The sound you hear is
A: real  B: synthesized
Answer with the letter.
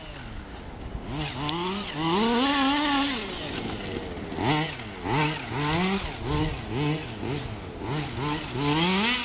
A